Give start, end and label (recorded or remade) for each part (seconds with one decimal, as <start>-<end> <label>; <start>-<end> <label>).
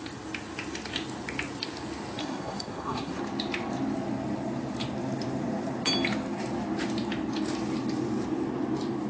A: 0.0-2.2 recorded; 2.2-3.2 remade; 3.2-9.1 recorded